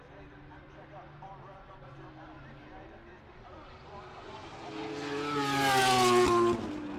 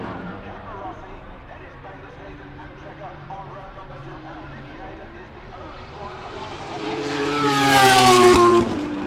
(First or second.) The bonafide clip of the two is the first